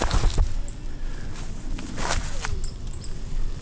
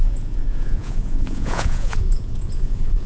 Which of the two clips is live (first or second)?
first